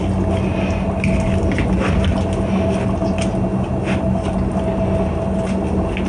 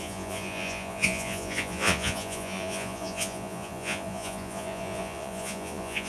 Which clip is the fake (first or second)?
second